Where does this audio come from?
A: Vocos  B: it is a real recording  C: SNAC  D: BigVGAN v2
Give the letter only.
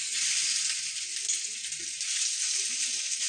B